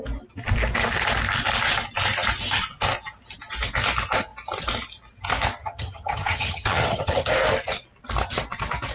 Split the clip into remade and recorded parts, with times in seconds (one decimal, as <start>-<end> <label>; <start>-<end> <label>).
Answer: 0.0-5.6 recorded; 5.6-7.3 remade; 7.3-8.9 recorded